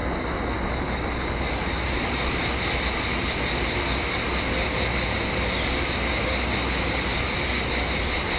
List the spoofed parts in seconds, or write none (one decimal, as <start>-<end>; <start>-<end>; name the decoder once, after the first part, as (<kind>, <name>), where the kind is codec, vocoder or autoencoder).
none